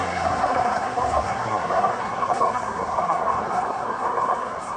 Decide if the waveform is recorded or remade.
remade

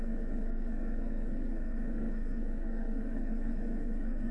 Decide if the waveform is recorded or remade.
remade